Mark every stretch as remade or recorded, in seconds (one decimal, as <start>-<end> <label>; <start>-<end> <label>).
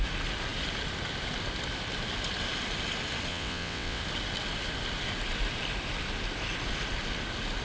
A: 0.0-3.3 recorded; 3.3-4.0 remade; 4.0-7.6 recorded